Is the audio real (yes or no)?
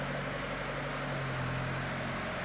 yes